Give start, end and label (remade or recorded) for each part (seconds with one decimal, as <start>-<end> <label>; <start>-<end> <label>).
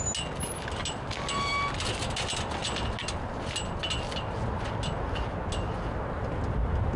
0.0-7.0 recorded